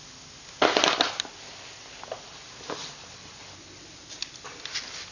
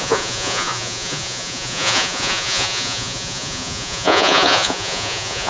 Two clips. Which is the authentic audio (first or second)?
first